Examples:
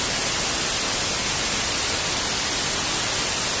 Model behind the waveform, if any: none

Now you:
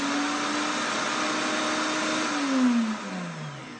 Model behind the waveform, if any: none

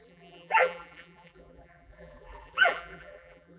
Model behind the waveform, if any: vocoder, BigVGAN v2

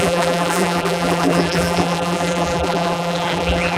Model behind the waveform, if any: vocoder, BigVGAN v2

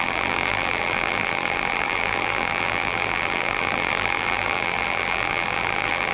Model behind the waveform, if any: vocoder, BigVGAN v2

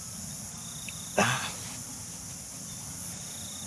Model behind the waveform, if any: none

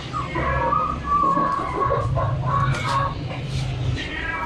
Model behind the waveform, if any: vocoder, BigVGAN v2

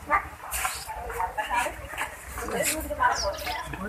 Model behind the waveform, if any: vocoder, BigVGAN v2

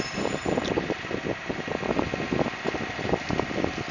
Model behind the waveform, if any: vocoder, BigVGAN v2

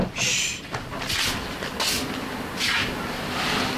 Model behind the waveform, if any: none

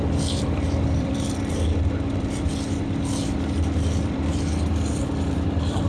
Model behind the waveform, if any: vocoder, BigVGAN v2